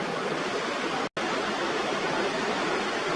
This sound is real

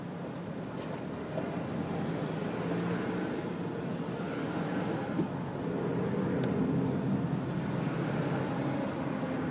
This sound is real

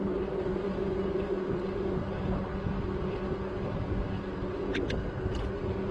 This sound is real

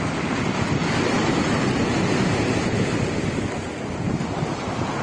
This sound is real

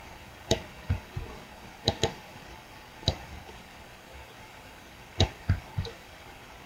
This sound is fake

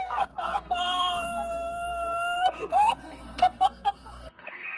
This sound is fake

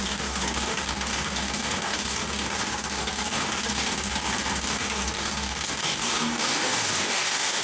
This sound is fake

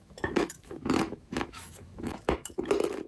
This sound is fake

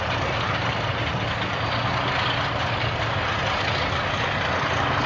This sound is real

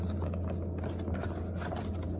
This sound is real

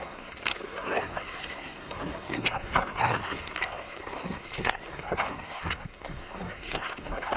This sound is fake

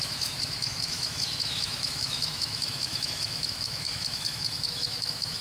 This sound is fake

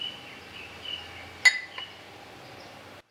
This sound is real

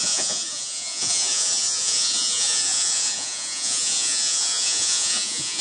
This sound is fake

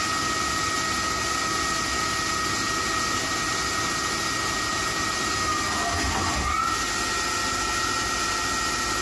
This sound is real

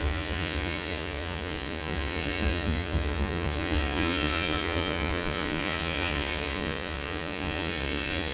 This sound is fake